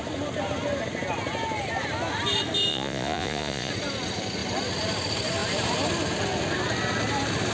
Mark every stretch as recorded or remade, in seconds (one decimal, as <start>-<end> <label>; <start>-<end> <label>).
0.0-2.7 recorded; 2.7-3.7 remade; 3.7-7.5 recorded